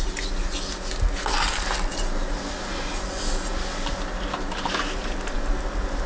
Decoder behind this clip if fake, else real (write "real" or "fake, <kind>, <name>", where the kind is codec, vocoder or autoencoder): real